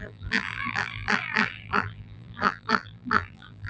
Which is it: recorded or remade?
remade